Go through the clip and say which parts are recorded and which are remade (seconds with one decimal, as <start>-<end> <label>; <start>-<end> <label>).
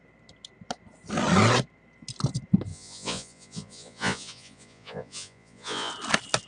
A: 0.0-2.7 recorded; 2.7-5.9 remade; 5.9-6.5 recorded